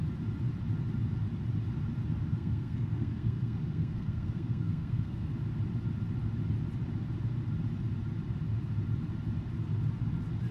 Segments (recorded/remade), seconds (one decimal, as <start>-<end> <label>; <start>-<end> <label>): 0.0-2.3 recorded; 2.3-5.3 remade; 5.3-10.5 recorded